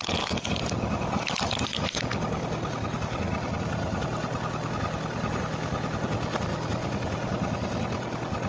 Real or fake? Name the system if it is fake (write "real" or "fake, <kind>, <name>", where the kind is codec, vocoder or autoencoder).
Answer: real